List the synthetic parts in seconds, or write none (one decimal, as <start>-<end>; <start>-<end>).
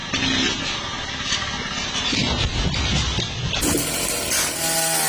none